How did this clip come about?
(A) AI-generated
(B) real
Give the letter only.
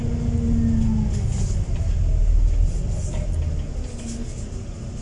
B